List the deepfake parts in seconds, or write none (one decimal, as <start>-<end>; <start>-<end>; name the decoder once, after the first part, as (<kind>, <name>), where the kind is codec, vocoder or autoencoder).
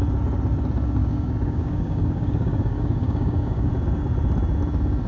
1.0-3.7 (codec, DAC)